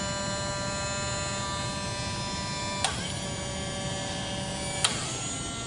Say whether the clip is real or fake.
real